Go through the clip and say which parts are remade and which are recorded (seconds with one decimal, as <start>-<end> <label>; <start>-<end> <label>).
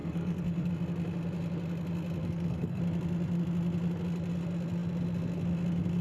0.0-0.7 remade; 0.7-2.2 recorded; 2.2-2.8 remade; 2.8-6.0 recorded